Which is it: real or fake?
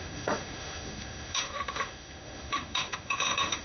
fake